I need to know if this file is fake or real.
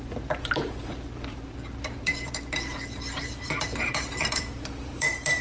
fake